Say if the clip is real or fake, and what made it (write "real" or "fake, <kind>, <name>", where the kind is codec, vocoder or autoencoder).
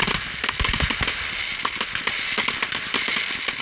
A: real